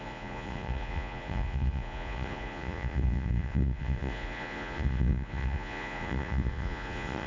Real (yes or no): no